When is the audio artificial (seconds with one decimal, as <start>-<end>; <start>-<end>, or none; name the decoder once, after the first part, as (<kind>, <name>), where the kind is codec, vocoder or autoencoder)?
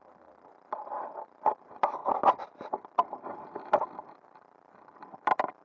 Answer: 0.0-5.6 (vocoder, BigVGAN v2)